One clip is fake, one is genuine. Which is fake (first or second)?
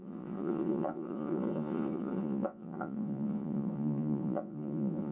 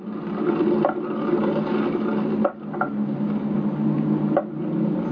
first